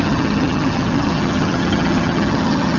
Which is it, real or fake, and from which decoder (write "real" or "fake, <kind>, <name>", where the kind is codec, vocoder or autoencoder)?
fake, vocoder, HiFi-GAN